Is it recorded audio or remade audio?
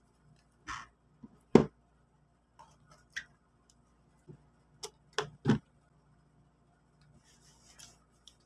recorded